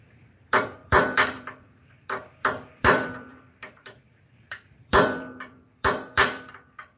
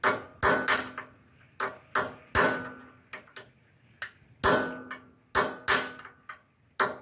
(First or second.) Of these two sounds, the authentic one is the second